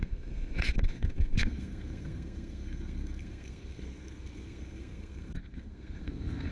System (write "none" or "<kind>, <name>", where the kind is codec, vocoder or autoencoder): codec, SNAC